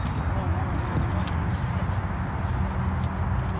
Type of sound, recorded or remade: recorded